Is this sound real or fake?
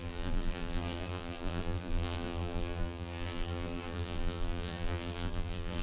fake